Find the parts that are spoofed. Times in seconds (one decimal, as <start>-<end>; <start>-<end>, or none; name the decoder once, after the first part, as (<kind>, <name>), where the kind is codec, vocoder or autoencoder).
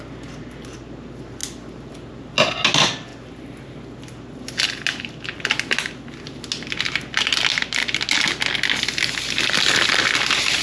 none